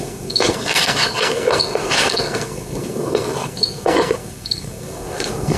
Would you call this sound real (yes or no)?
no